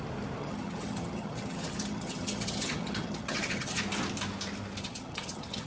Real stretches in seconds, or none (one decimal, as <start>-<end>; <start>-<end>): 0.0-0.4; 3.8-4.8